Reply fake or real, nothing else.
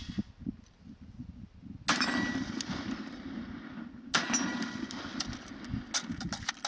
real